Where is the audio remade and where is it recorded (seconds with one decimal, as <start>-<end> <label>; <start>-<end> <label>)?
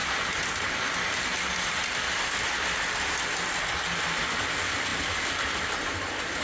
0.0-4.9 recorded; 4.9-5.8 remade; 5.8-6.4 recorded